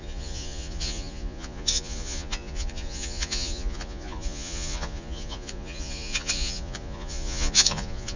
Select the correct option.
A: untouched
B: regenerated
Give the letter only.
B